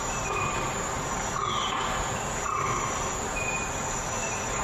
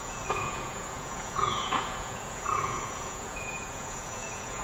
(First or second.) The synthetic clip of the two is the second